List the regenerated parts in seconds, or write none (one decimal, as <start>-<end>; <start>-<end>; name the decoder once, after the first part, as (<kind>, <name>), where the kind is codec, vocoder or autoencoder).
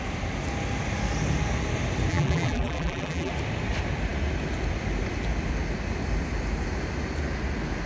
2.1-3.3 (vocoder, BigVGAN v2)